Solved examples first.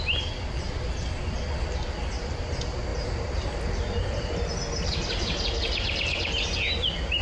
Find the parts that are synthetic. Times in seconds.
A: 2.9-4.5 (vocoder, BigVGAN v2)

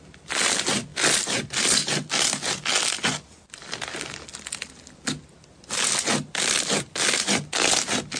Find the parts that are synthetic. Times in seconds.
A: none